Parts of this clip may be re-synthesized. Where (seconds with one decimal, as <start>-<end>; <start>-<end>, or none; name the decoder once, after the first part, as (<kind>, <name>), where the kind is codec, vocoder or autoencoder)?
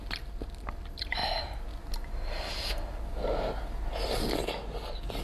none